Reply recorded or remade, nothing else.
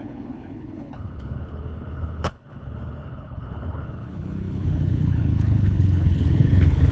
remade